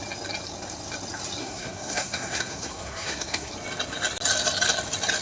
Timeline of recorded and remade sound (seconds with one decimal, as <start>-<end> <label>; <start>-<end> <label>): 0.0-1.4 recorded; 1.4-3.5 remade; 3.5-5.2 recorded